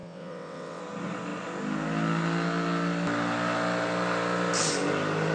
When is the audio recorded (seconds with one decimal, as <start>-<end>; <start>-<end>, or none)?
0.8-5.3